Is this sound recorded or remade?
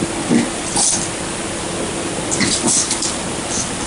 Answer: recorded